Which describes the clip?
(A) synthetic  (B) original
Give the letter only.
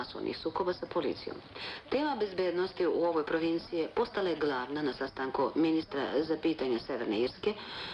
B